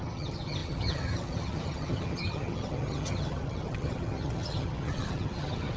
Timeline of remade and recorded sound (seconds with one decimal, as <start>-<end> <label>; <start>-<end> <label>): 0.0-5.8 remade